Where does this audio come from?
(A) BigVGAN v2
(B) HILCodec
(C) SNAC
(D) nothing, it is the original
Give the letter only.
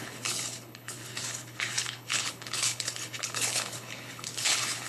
B